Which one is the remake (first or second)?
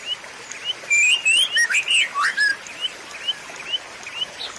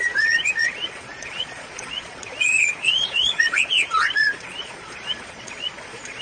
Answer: second